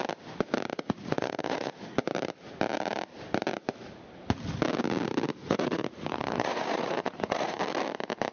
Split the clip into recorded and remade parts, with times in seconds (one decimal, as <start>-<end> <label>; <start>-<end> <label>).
0.0-0.7 recorded; 0.7-1.7 remade; 1.7-5.4 recorded; 5.4-7.6 remade; 7.6-8.3 recorded